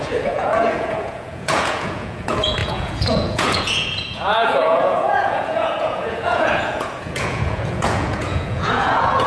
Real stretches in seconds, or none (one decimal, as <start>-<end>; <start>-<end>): none